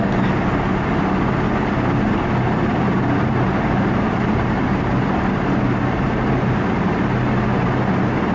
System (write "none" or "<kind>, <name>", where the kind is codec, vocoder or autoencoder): none